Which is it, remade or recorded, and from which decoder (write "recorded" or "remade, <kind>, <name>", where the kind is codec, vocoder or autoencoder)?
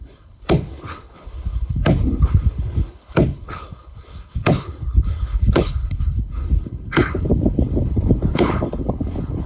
remade, codec, HILCodec